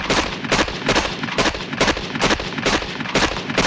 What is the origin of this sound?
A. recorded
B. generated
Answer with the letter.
A